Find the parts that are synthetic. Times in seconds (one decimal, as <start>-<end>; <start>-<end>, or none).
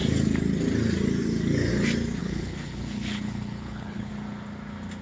2.2-4.1